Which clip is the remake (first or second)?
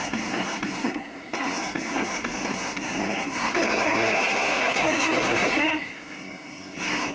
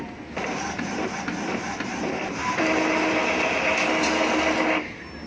first